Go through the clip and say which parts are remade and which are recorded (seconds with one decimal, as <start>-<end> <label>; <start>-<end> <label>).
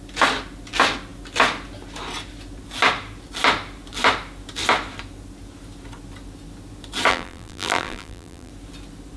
0.0-7.1 recorded; 7.1-8.5 remade; 8.5-9.2 recorded